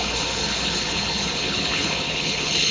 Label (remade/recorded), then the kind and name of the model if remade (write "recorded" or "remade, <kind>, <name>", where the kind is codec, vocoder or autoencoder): remade, codec, HILCodec